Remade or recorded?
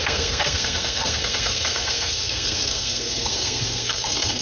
remade